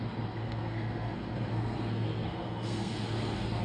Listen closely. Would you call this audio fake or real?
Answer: fake